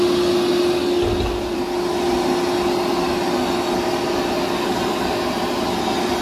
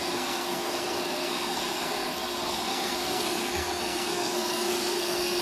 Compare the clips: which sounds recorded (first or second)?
first